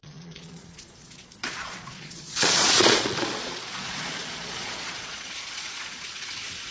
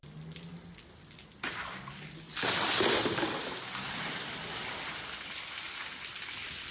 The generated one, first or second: first